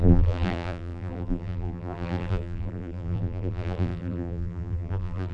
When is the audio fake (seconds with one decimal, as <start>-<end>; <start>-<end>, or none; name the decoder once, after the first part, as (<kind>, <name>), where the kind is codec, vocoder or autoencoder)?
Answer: 0.0-5.3 (vocoder, BigVGAN v2)